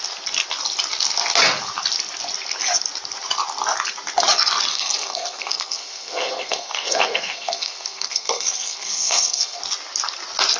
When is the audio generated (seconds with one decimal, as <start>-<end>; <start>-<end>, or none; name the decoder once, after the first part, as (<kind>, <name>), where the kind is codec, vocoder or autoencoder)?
4.7-9.6 (codec, SNAC)